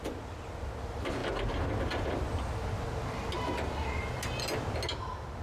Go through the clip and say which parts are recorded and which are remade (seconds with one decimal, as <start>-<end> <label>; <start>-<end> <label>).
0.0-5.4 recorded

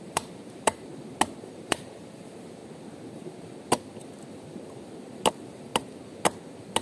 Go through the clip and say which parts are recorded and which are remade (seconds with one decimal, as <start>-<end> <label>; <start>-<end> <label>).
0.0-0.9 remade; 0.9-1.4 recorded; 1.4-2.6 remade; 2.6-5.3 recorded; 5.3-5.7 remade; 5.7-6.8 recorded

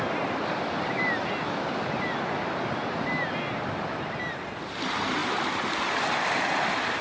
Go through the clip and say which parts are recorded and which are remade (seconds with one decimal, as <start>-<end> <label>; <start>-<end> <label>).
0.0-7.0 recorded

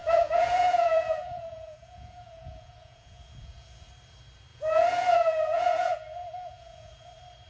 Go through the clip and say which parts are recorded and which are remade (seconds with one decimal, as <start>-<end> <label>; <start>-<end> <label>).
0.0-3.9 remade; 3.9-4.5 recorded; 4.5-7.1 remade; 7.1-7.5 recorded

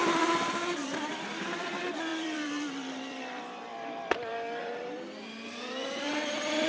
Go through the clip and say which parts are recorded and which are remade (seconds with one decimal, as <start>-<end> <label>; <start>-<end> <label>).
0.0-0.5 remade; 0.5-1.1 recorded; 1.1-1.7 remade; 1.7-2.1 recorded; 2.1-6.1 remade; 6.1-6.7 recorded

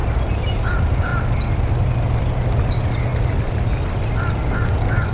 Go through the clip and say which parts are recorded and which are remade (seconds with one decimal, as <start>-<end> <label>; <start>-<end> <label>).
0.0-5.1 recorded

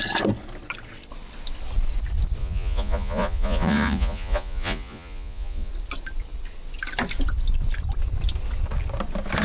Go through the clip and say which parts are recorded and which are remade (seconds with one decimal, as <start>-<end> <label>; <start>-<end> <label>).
0.0-2.4 recorded; 2.4-5.7 remade; 5.7-9.4 recorded